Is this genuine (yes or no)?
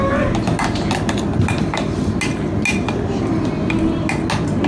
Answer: yes